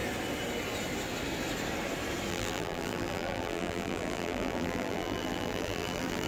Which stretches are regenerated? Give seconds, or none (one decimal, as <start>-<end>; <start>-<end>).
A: 2.3-6.3